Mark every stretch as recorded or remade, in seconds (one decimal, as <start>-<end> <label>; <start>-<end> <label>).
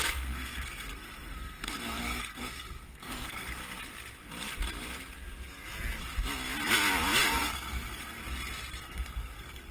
0.0-3.6 remade; 3.6-7.3 recorded; 7.3-8.2 remade; 8.2-8.8 recorded; 8.8-9.7 remade